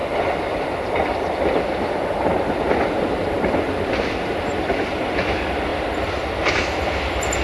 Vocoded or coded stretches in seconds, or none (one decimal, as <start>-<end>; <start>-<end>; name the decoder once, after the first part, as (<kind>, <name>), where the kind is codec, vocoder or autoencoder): 3.2-5.7 (vocoder, BigVGAN v2); 6.6-7.4